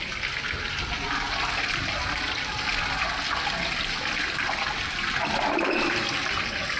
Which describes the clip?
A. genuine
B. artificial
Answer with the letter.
A